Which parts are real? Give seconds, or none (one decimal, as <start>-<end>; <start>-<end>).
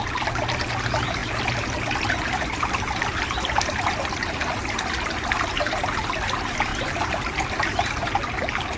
0.0-8.8